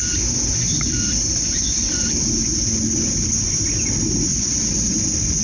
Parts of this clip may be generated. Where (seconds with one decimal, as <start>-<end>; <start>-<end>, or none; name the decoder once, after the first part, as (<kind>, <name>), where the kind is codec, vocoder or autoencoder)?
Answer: 4.3-4.9 (vocoder, WaveNeXt)